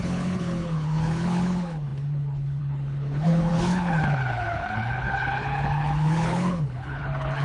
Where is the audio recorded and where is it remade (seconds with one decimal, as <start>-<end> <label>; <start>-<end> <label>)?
0.0-7.4 remade